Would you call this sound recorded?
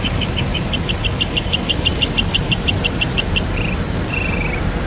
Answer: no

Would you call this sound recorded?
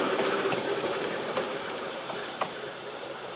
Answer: no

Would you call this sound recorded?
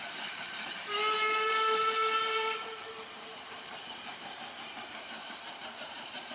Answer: no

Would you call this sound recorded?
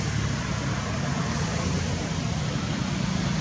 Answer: yes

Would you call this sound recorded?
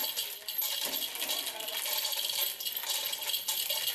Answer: yes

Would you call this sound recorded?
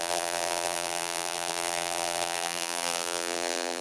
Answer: no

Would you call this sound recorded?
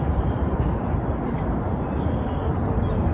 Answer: yes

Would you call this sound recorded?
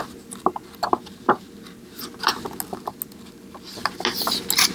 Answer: yes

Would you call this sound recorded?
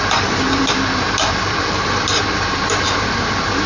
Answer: no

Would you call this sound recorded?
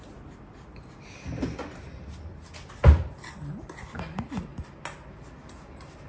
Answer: yes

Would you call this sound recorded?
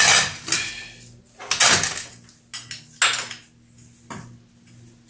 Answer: yes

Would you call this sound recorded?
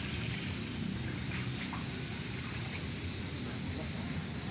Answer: yes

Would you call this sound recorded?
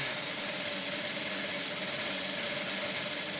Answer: no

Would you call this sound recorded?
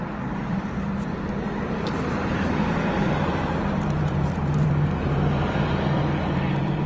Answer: no